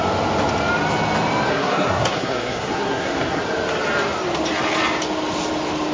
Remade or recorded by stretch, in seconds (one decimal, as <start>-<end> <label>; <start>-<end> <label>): 0.0-1.5 recorded; 1.5-3.4 remade; 3.4-5.9 recorded